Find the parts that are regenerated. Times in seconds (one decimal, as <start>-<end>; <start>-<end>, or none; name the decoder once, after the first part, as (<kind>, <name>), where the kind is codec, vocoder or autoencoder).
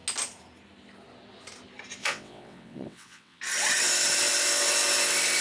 2.0-3.4 (vocoder, WaveNeXt)